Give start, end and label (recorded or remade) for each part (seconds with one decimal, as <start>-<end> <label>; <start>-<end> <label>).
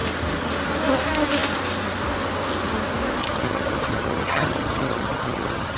0.0-3.2 recorded; 3.2-5.8 remade